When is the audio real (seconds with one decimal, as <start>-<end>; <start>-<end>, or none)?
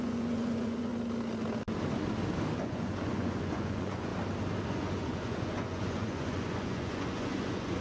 0.9-2.6; 4.1-4.7